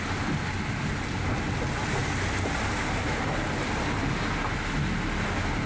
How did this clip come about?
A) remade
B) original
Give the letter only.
B